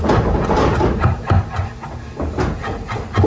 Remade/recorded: recorded